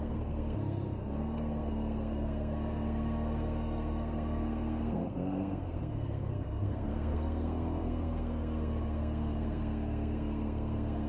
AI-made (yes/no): yes